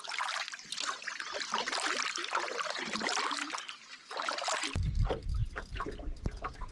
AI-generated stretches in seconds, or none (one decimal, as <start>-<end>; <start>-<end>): none